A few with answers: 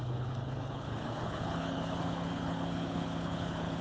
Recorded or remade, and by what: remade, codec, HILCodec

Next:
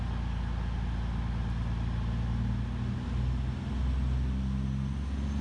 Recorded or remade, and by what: recorded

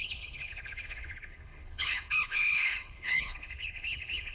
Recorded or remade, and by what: remade, codec, HILCodec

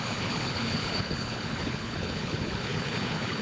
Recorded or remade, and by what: remade, codec, HILCodec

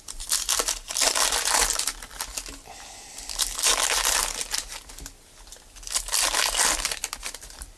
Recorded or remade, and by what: recorded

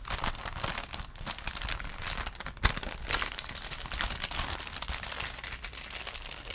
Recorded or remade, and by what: recorded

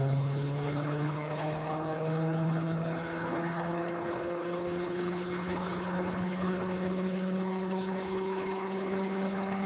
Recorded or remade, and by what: remade, codec, HILCodec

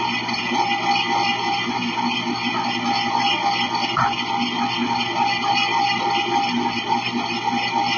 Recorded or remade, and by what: recorded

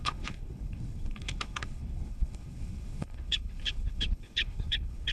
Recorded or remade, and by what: remade, codec, HILCodec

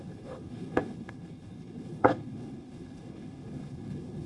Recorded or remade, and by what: remade, codec, HILCodec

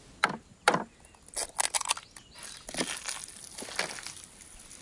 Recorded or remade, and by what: recorded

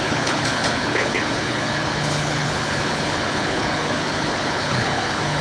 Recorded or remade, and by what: remade, codec, HILCodec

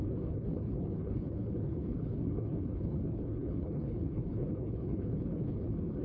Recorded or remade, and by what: remade, codec, HILCodec